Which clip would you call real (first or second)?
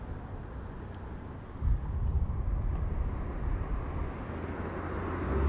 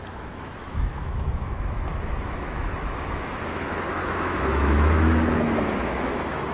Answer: first